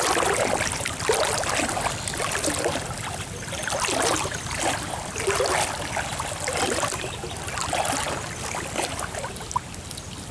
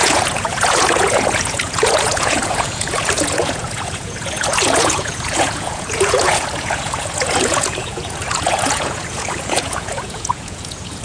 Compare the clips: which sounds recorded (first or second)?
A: first